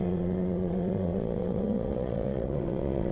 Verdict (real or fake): fake